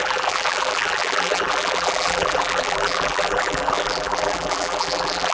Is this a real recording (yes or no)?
no